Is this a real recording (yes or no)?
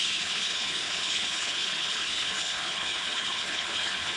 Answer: no